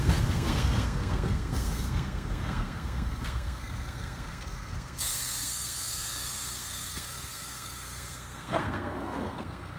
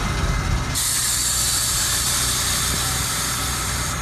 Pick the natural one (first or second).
second